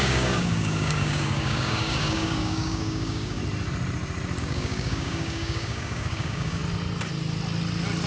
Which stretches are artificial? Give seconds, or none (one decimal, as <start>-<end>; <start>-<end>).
0.0-3.4; 4.4-6.6